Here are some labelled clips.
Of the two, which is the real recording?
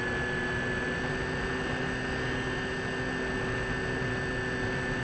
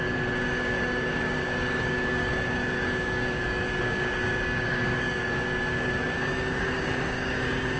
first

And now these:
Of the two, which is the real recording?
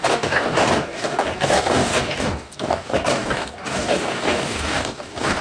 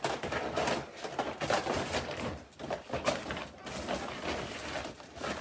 second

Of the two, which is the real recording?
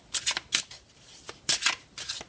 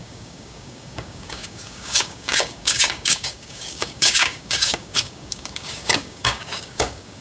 first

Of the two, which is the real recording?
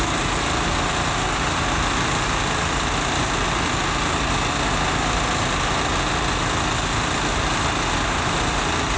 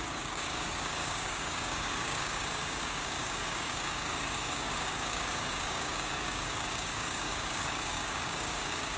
first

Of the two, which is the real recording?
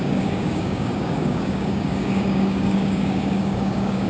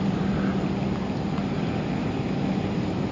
second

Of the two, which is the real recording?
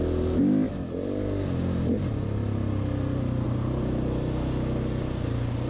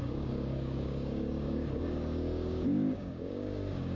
first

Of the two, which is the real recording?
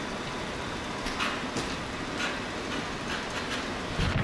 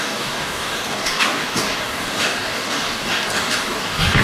first